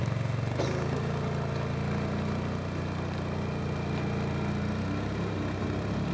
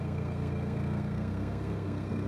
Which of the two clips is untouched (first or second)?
first